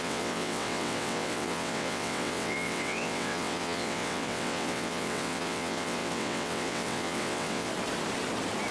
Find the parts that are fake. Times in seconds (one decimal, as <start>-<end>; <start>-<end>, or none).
0.0-7.7